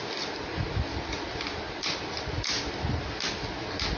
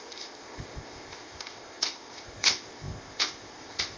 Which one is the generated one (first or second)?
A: second